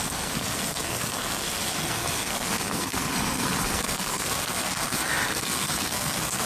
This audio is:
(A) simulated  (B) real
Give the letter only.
A